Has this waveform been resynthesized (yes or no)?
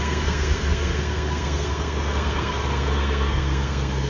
yes